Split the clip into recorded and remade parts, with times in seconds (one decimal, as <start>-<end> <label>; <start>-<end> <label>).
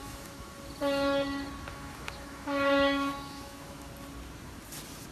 0.0-0.5 remade; 0.5-1.7 recorded; 1.7-3.9 remade; 3.9-5.1 recorded